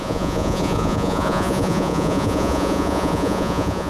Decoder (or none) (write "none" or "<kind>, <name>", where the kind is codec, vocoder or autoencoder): vocoder, Vocos